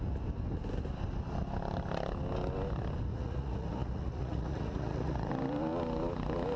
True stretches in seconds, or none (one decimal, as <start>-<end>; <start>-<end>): 0.0-3.1; 5.3-6.6